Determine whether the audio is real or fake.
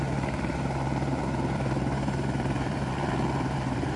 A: fake